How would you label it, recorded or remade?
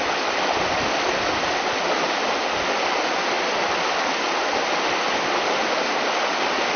recorded